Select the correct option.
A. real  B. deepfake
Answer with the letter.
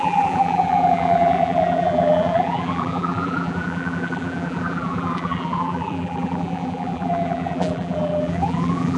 B